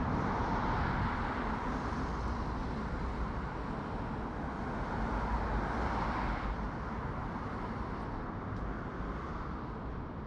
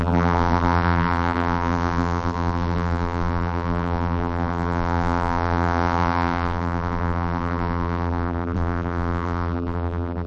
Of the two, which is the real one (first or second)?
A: first